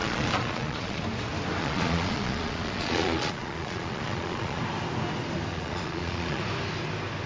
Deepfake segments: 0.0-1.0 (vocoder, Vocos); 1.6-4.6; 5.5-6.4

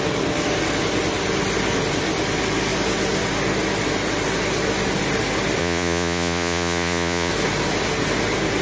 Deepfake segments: 5.6-7.3 (vocoder, Vocos)

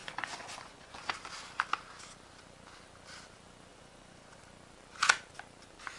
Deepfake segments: 0.0-1.1 (vocoder, Vocos); 3.7-4.4

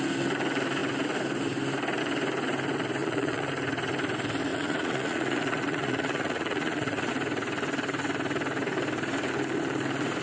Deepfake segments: 3.0-3.5 (vocoder, Vocos); 4.5-7.1

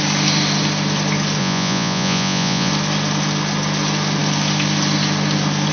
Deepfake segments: 1.4-2.7 (vocoder, Vocos)